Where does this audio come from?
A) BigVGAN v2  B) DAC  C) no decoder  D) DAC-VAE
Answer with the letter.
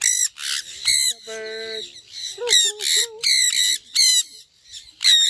C